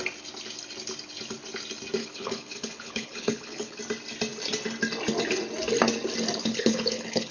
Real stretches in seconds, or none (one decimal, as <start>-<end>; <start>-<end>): 0.0-2.0; 3.8-6.4